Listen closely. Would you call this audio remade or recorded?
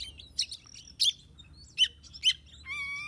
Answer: recorded